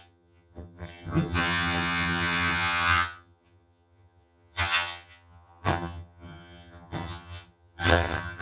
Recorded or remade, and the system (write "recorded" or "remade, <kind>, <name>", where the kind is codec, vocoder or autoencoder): remade, vocoder, HiFi-GAN